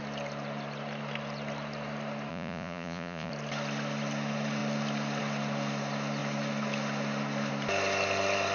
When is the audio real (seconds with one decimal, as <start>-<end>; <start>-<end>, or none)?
0.0-2.3; 3.3-8.5

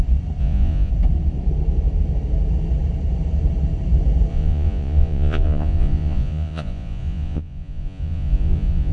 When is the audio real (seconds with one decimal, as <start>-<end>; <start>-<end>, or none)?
0.0-0.4; 0.9-4.3